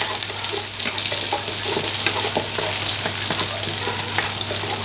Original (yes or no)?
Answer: yes